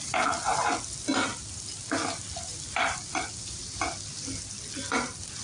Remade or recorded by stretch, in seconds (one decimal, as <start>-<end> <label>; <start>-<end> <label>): 0.0-5.4 recorded